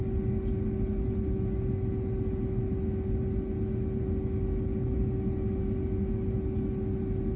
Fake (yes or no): no